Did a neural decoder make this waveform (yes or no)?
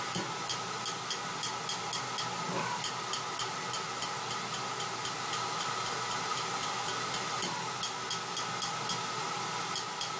no